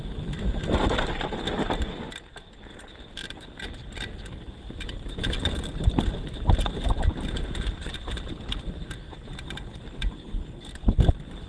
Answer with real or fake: real